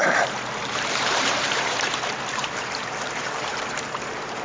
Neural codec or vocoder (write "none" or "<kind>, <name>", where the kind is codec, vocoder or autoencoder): vocoder, BigVGAN v2